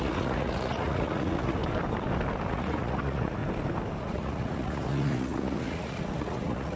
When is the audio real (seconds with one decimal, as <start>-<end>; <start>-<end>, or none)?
1.6-2.5; 3.4-4.0